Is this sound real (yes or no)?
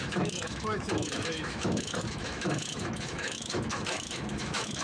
no